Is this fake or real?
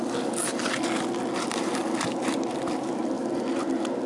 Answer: real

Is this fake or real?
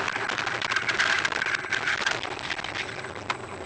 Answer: fake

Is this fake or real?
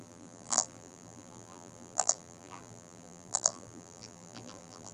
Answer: fake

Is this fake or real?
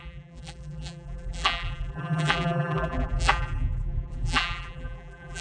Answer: fake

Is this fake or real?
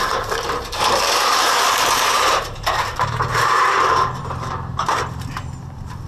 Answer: fake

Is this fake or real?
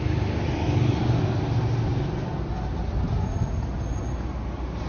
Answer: real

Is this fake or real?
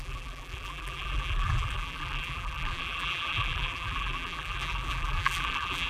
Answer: fake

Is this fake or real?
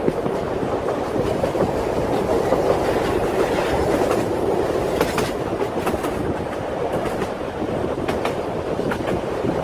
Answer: fake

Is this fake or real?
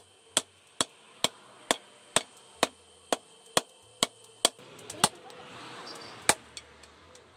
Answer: real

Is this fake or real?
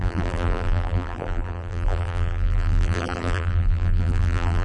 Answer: fake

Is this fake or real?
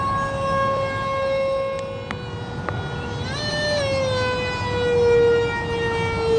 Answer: real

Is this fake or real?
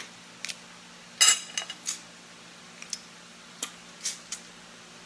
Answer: real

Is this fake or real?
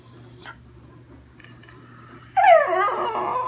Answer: real